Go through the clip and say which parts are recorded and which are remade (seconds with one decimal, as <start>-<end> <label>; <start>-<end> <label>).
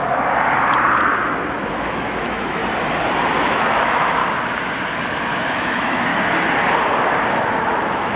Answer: 0.0-1.7 recorded; 1.7-2.6 remade; 2.6-3.5 recorded; 3.5-4.2 remade; 4.2-5.5 recorded; 5.5-6.1 remade; 6.1-7.3 recorded; 7.3-8.2 remade